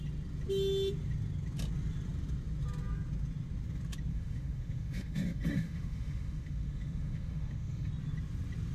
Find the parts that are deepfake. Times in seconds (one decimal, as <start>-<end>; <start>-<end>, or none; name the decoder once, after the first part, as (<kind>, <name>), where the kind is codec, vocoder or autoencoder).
4.1-7.9 (autoencoder, DAC-VAE)